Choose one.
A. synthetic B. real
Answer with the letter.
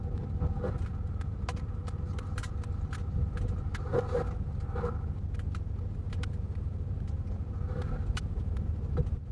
B